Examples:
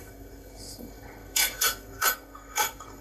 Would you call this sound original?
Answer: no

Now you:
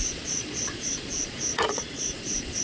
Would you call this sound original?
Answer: no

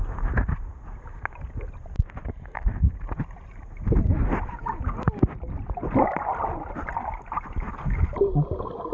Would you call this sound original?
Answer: yes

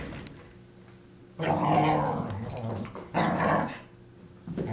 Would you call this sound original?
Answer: yes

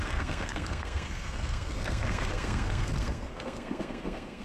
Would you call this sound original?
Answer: no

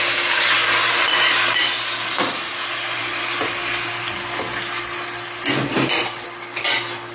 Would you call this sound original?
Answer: yes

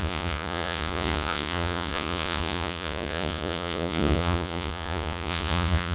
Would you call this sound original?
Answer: no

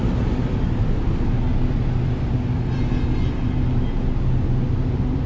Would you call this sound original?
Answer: yes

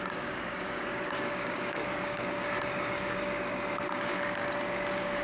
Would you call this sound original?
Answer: no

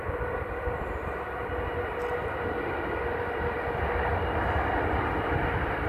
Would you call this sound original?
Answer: yes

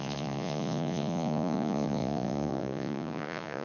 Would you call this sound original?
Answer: no